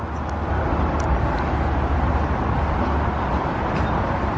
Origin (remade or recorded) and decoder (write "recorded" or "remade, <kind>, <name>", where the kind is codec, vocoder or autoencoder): recorded